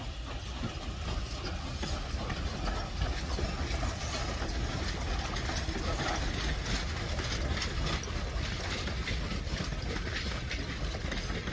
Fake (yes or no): no